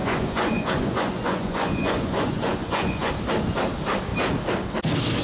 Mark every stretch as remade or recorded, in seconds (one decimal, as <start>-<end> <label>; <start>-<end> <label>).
0.0-3.1 remade; 3.1-5.2 recorded